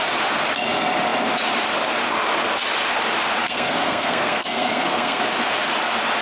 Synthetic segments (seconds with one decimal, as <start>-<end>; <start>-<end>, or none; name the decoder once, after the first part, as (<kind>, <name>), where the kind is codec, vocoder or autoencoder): 3.4-5.2 (codec, SNAC)